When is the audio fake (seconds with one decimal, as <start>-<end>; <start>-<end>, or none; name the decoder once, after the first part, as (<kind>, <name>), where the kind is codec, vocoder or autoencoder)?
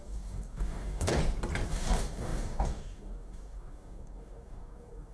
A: 0.0-1.2 (codec, DAC); 1.7-5.1